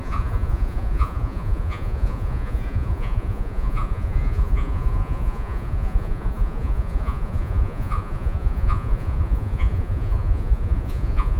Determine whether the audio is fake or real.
fake